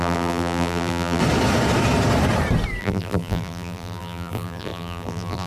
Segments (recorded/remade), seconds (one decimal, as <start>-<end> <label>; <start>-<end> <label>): 0.0-1.2 remade; 1.2-2.8 recorded; 2.8-5.5 remade